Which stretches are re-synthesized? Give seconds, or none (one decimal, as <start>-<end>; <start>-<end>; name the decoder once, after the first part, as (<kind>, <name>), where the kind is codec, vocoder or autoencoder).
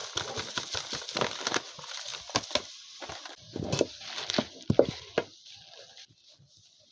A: none